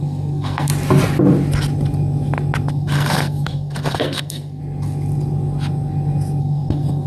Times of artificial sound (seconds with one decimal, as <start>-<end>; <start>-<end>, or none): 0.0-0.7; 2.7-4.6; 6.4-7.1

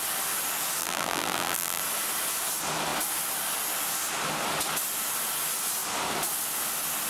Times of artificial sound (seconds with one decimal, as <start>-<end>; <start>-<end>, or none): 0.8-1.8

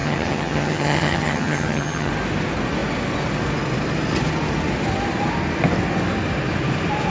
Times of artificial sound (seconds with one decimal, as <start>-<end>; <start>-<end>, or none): 0.0-2.1

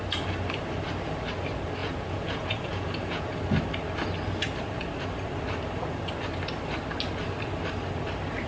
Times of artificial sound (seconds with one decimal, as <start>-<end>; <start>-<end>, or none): 1.8-3.4